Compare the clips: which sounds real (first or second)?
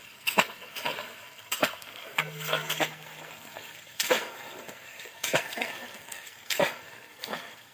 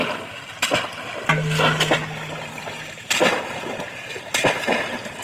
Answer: second